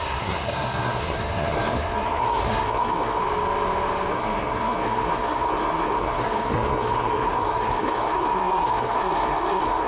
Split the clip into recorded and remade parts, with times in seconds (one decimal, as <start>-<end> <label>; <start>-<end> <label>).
0.0-3.2 remade; 3.2-4.1 recorded; 4.1-9.9 remade